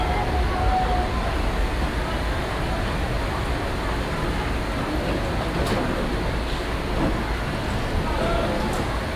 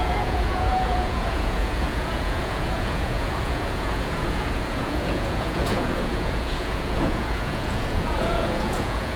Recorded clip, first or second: first